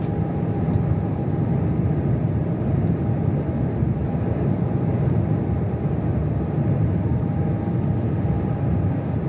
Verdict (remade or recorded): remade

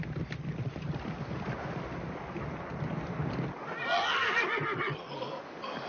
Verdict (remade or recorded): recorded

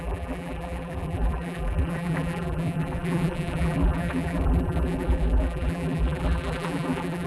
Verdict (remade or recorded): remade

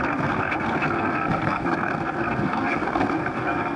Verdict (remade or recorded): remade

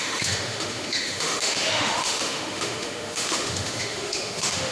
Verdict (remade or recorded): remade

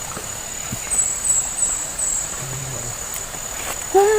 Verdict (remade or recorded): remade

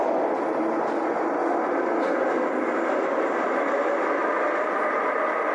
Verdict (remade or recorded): recorded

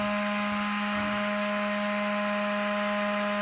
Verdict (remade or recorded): recorded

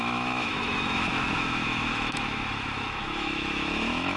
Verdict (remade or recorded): remade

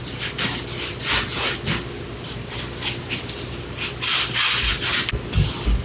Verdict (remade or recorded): recorded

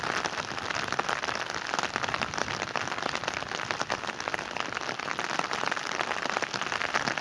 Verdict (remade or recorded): recorded